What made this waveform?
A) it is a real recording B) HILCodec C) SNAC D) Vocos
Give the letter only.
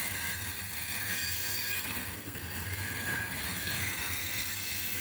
C